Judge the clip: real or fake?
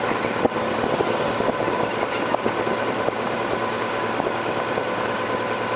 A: real